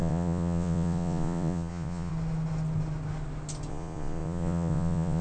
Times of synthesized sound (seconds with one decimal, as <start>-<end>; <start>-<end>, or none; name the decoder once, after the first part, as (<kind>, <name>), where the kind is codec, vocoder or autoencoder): 0.0-2.1 (vocoder, Vocos); 3.7-5.2